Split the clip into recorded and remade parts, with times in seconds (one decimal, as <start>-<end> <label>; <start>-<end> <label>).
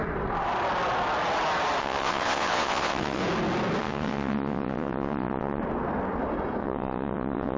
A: 0.0-1.8 recorded; 1.8-3.2 remade; 3.2-3.8 recorded; 3.8-5.6 remade; 5.6-6.6 recorded; 6.6-7.6 remade